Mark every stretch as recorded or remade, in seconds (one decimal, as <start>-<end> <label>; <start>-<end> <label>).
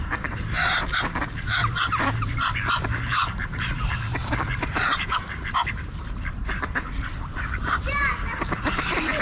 0.0-9.2 remade